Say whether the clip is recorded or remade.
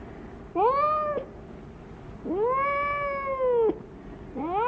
recorded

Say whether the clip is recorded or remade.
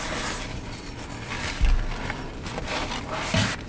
recorded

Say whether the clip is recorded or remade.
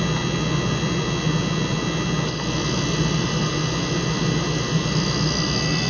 recorded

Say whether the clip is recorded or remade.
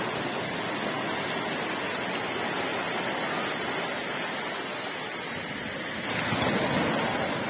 recorded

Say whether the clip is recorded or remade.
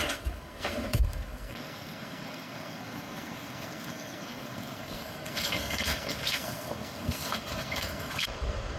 remade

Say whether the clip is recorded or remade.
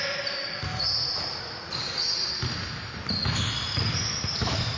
recorded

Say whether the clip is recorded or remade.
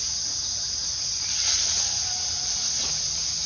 recorded